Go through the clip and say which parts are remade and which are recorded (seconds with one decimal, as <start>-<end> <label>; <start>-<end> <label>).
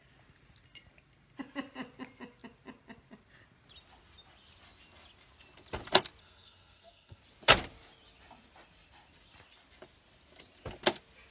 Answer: 0.0-6.2 recorded; 6.2-7.2 remade; 7.2-11.3 recorded